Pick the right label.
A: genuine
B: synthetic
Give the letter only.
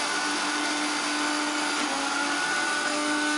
A